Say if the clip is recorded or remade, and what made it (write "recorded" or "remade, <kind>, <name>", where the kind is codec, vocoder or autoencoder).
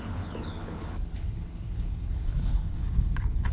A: remade, codec, HILCodec